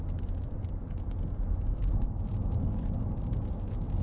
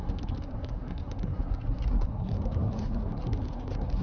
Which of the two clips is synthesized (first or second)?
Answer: second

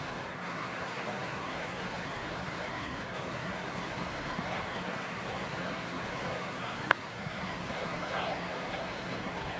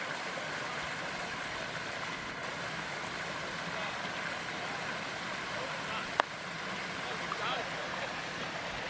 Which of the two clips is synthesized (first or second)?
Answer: first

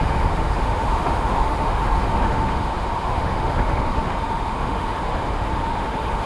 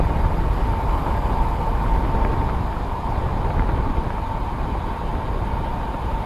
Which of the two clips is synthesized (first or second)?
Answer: first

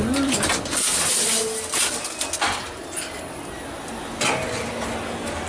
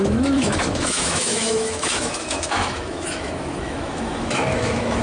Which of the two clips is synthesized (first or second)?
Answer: second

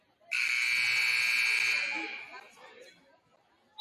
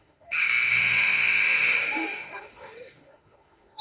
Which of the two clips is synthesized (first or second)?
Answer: second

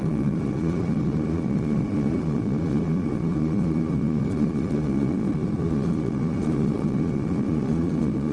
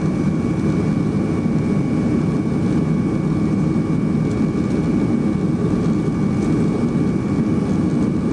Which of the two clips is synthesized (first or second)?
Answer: first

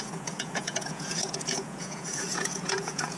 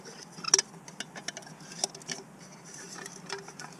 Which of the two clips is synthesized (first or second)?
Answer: first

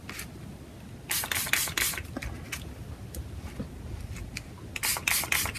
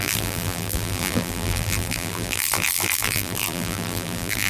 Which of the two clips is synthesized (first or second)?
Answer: second